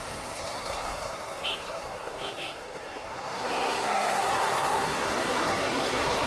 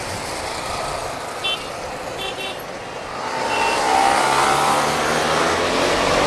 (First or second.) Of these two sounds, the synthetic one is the first